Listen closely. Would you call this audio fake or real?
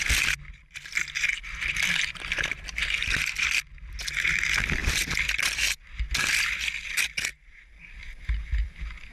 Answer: real